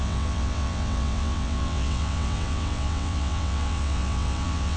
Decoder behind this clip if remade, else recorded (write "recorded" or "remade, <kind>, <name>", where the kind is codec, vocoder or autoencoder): remade, vocoder, WaveNeXt